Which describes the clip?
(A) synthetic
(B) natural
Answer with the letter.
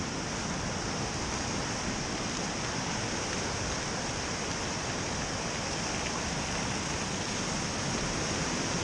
B